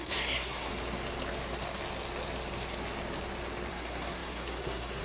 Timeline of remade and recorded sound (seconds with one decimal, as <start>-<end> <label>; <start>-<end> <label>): 0.0-0.7 remade; 0.7-3.7 recorded; 3.7-5.0 remade